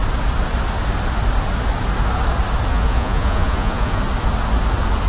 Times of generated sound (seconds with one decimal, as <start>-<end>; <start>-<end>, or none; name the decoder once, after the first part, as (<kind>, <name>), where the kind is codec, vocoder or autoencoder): 2.7-4.0 (vocoder, Vocos)